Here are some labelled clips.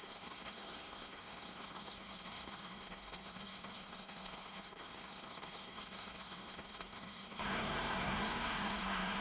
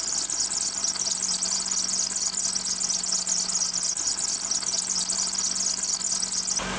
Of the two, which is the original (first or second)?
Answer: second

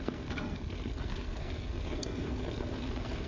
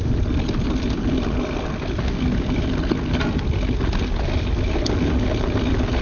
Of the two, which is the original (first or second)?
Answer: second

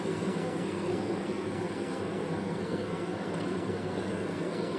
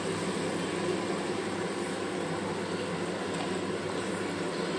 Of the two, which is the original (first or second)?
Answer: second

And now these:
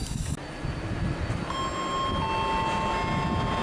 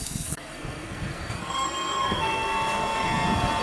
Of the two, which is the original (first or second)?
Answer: first